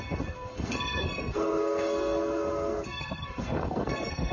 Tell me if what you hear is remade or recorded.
remade